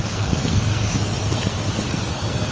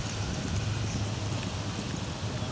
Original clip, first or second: second